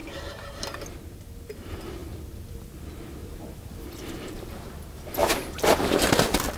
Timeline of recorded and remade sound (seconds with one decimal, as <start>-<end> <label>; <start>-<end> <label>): 0.0-2.0 recorded; 2.0-2.7 remade; 2.7-3.2 recorded; 3.2-4.5 remade; 4.5-6.6 recorded